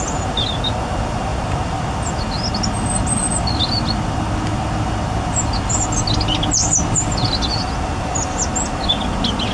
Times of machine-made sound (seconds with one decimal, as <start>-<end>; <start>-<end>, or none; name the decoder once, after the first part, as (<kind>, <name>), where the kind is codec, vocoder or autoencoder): none